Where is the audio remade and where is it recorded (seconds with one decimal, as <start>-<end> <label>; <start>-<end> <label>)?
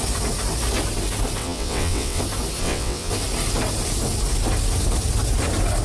0.0-1.4 recorded; 1.4-2.2 remade; 2.2-2.6 recorded; 2.6-3.1 remade; 3.1-5.8 recorded